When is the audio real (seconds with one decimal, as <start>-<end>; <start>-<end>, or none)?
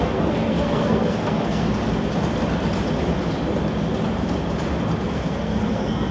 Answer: 1.8-5.0